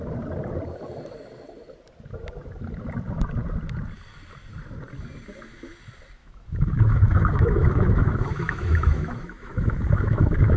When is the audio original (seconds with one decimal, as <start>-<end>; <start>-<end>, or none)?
0.0-6.2